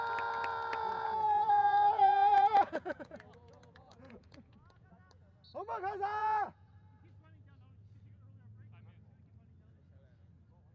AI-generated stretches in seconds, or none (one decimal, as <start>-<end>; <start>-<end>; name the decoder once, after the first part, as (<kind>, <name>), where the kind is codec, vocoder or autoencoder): 0.7-4.9 (vocoder, Vocos); 6.2-6.7